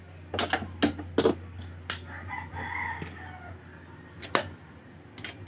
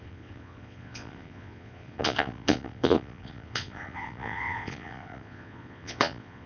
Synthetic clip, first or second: second